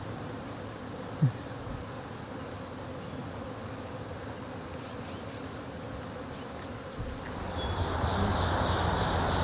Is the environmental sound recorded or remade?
recorded